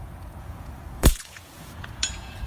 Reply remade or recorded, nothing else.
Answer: remade